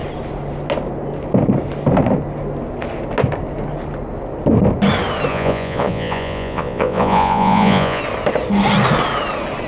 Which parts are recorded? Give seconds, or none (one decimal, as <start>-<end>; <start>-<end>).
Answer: 0.0-5.3; 8.0-9.7